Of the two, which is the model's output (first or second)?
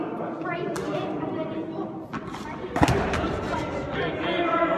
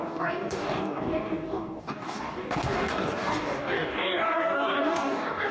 second